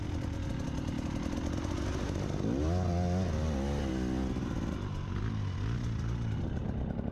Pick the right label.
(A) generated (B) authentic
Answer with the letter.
B